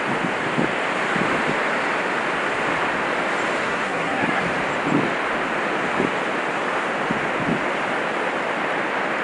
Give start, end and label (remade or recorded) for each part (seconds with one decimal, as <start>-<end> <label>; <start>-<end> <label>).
0.0-3.6 recorded; 3.6-4.4 remade; 4.4-9.2 recorded